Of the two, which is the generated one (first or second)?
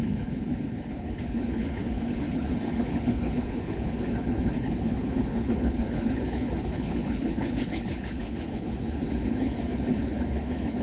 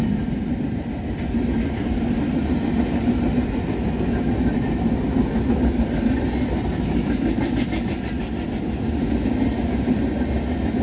first